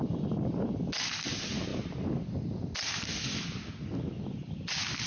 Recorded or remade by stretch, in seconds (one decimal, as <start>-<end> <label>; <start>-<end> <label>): 0.0-5.1 recorded